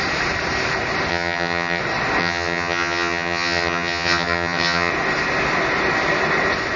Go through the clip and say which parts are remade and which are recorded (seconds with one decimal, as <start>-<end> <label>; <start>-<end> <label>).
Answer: 0.0-1.1 recorded; 1.1-1.8 remade; 1.8-2.2 recorded; 2.2-4.9 remade; 4.9-6.8 recorded